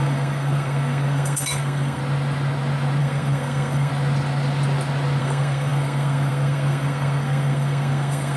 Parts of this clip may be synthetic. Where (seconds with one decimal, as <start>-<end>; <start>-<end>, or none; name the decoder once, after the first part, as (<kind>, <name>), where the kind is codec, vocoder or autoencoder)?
0.0-2.0 (codec, SNAC); 3.0-3.9; 5.2-8.4